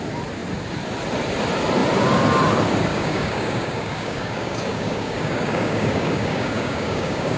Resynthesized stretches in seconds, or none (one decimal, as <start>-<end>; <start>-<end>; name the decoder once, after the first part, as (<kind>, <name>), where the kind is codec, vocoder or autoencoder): 2.9-7.4 (codec, DAC)

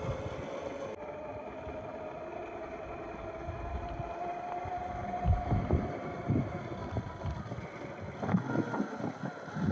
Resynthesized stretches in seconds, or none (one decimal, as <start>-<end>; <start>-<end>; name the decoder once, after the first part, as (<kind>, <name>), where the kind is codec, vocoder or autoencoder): none

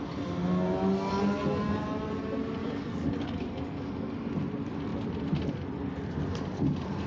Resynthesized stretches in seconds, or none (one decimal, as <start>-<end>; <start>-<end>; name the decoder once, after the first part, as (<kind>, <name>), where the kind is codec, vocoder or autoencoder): 2.6-3.9 (codec, DAC)

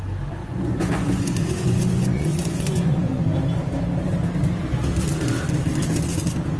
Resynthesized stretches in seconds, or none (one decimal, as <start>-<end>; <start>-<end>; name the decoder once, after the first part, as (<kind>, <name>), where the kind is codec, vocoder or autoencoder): 0.4-3.2 (vocoder, Vocos)